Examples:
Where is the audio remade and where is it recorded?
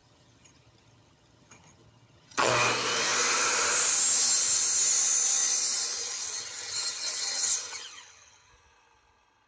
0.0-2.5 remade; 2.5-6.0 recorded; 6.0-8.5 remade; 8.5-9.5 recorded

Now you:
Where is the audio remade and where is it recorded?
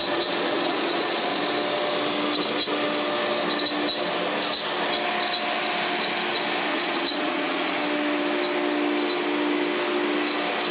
0.0-1.4 remade; 1.4-6.7 recorded; 6.7-7.8 remade; 7.8-10.7 recorded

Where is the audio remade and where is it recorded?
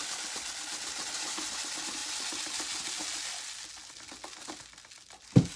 0.0-5.6 recorded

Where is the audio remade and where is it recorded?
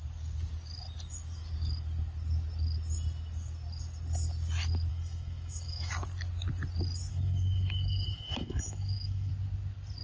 0.0-4.9 recorded; 4.9-5.9 remade; 5.9-7.1 recorded; 7.1-9.3 remade; 9.3-10.0 recorded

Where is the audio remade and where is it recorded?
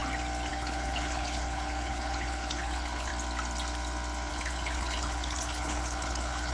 0.0-0.5 recorded; 0.5-3.1 remade; 3.1-4.3 recorded; 4.3-6.5 remade